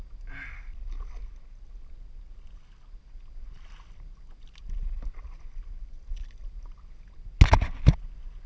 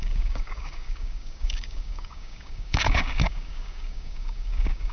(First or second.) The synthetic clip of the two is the second